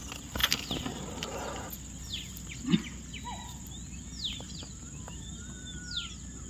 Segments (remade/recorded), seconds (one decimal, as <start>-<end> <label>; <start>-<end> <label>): 0.0-0.4 remade; 0.4-2.1 recorded; 2.1-6.5 remade